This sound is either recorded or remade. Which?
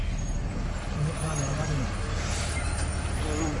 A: recorded